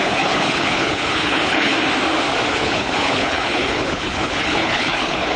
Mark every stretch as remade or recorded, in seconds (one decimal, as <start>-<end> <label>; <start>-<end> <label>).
0.0-1.7 remade; 1.7-2.5 recorded; 2.5-5.4 remade